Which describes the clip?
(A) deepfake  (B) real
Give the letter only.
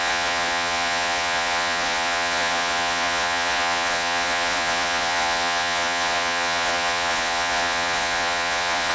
A